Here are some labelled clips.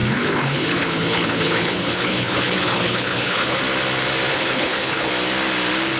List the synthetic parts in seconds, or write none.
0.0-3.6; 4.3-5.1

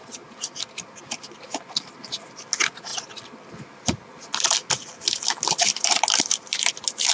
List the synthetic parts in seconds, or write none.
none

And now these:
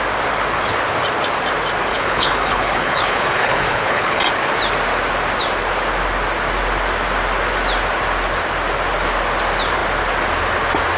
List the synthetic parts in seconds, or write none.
1.9-4.2

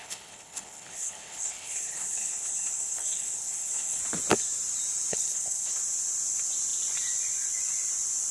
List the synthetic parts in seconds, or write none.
0.0-4.0; 5.1-5.7